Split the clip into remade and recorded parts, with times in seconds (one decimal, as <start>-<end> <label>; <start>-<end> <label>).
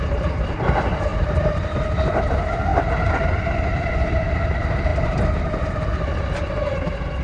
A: 0.0-1.1 recorded; 1.1-2.0 remade; 2.0-2.7 recorded; 2.7-3.9 remade; 3.9-7.2 recorded